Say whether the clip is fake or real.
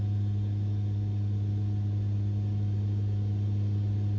real